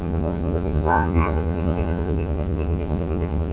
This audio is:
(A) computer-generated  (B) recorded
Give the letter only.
A